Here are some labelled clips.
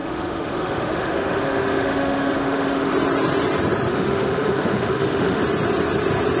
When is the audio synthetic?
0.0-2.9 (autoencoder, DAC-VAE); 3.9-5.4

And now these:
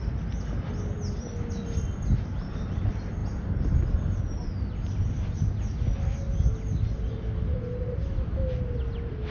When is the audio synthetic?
none

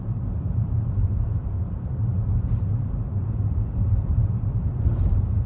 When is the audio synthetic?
0.0-5.5 (vocoder, BigVGAN v2)

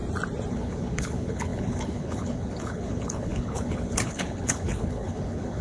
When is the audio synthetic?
0.5-5.6 (codec, HILCodec)

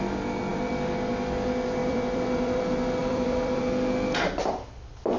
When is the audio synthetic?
0.5-1.1 (vocoder, BigVGAN v2); 1.8-2.6; 3.0-3.6

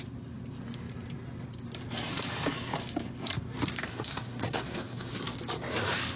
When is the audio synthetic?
3.9-5.2 (codec, SNAC)

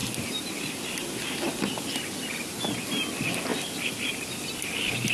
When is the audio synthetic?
none

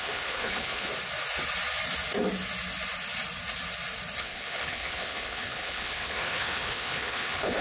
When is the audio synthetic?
0.0-0.9 (codec, HILCodec); 4.2-7.6